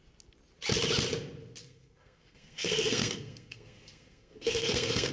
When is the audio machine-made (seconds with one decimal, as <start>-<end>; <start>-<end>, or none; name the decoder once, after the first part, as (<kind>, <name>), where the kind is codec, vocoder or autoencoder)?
1.6-5.1 (codec, SNAC)